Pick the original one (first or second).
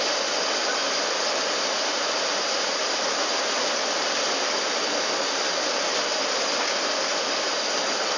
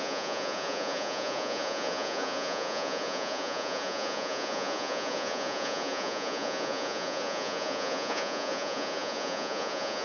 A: first